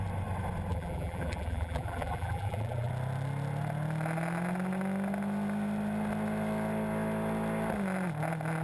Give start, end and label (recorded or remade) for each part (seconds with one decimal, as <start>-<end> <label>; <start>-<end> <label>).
0.0-0.7 recorded; 0.7-2.9 remade; 2.9-8.6 recorded